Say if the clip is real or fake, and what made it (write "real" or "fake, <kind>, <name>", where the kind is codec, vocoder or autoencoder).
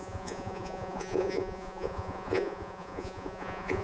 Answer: fake, vocoder, Vocos